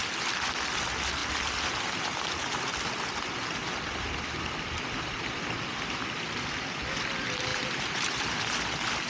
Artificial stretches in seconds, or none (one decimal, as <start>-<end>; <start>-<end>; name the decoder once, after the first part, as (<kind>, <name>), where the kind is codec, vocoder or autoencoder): 7.5-8.2 (vocoder, BigVGAN v2)